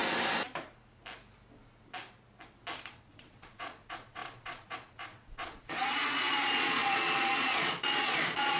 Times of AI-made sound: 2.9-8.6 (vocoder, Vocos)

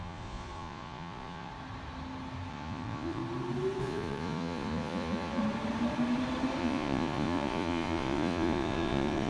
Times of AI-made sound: 0.0-1.5 (vocoder, Vocos); 2.5-3.2; 3.8-5.4; 6.6-9.3

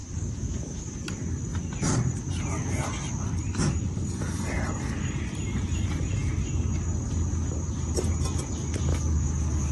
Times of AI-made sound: 0.0-1.1 (codec, DAC); 8.9-9.7

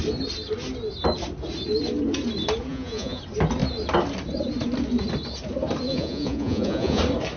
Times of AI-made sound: 2.7-3.2 (vocoder, Vocos); 5.9-7.0

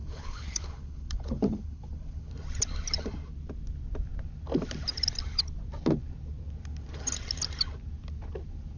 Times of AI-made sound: 0.0-2.3 (codec, HILCodec)

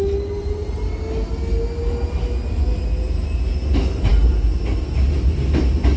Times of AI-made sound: none

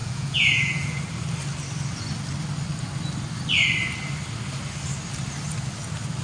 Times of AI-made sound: 0.0-1.0 (vocoder, Vocos)